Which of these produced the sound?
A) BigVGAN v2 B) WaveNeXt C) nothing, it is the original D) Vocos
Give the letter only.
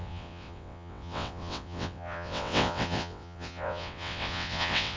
B